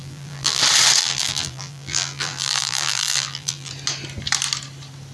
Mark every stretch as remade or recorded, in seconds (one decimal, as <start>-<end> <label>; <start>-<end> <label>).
0.0-0.6 remade; 0.6-1.0 recorded; 1.0-3.7 remade; 3.7-5.1 recorded